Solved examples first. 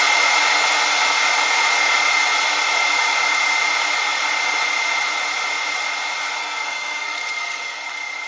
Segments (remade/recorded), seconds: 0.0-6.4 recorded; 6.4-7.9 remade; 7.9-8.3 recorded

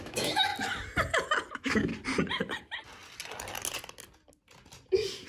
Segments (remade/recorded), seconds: 0.0-0.5 remade; 0.5-1.5 recorded; 1.5-1.9 remade; 1.9-5.3 recorded

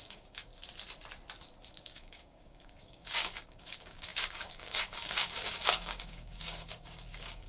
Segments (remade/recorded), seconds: 0.0-0.5 remade; 0.5-1.7 recorded; 1.7-7.5 remade

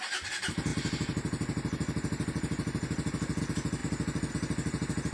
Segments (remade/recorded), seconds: 0.0-5.1 recorded

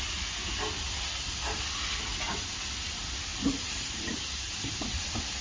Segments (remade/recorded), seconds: 0.0-3.3 recorded; 3.3-5.4 remade

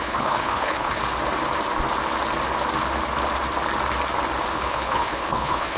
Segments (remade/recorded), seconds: 0.0-1.0 remade; 1.0-4.5 recorded; 4.5-5.8 remade

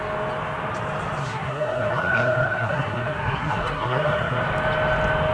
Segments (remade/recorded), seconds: 0.0-1.2 recorded; 1.2-4.4 remade; 4.4-5.3 recorded

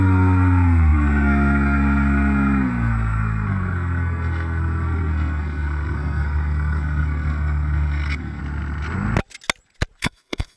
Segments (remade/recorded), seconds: 0.0-8.4 remade; 8.4-10.0 recorded; 10.0-10.6 remade